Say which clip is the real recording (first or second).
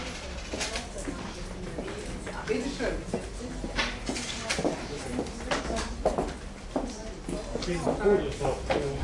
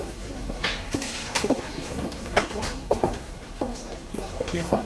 first